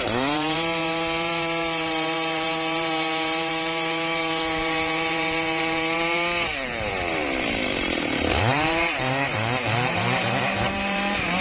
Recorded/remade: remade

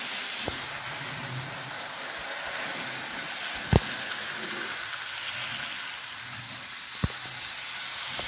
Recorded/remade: recorded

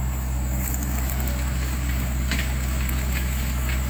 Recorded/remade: remade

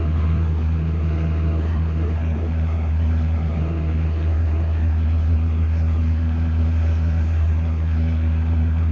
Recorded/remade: remade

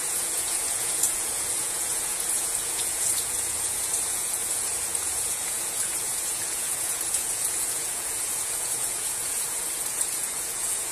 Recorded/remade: remade